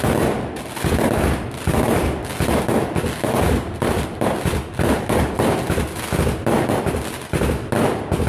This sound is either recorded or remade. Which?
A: recorded